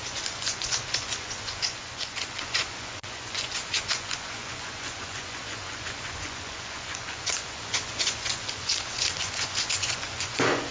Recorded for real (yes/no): no